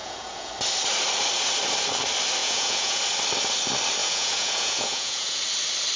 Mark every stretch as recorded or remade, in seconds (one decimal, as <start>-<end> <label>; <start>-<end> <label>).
0.0-0.5 remade; 0.5-2.4 recorded; 2.4-3.0 remade; 3.0-4.0 recorded; 4.0-5.4 remade; 5.4-6.0 recorded

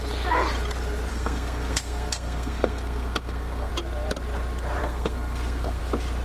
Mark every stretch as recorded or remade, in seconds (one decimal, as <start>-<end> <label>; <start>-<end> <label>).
0.0-1.1 recorded; 1.1-3.7 remade; 3.7-4.8 recorded; 4.8-5.8 remade; 5.8-6.2 recorded

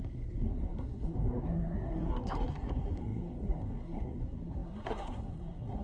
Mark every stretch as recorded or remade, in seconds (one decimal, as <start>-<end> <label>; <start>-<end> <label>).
0.0-5.8 remade

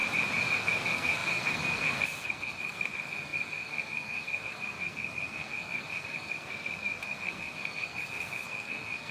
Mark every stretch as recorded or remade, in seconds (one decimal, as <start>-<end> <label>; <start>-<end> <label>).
0.0-0.5 recorded; 0.5-9.1 remade